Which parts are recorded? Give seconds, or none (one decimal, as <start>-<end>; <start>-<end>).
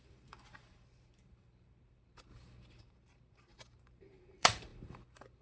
none